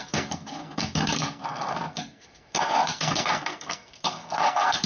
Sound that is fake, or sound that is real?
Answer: fake